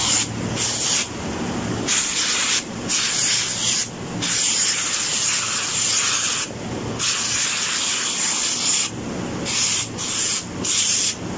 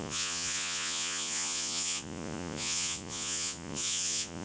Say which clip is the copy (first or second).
second